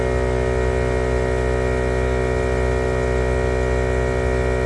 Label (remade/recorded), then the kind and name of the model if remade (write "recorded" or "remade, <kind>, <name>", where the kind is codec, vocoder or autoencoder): recorded